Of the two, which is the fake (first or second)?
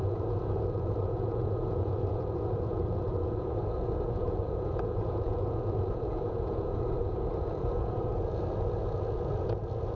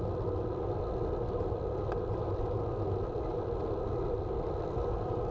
first